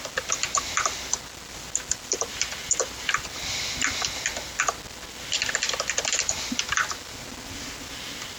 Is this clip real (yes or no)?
yes